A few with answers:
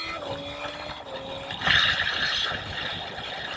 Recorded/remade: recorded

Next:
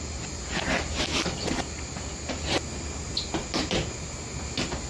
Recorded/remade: recorded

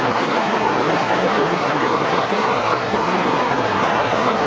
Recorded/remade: remade